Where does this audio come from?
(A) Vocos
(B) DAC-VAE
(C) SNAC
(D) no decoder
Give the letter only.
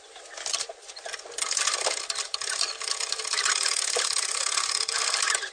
D